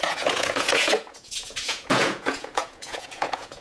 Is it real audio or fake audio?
fake